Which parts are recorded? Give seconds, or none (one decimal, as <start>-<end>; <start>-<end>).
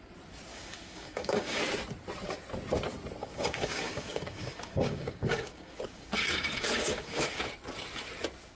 0.0-0.5; 1.6-3.2; 7.4-8.6